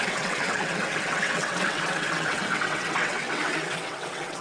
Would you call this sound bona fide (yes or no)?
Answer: no